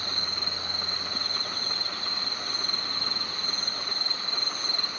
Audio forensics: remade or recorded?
recorded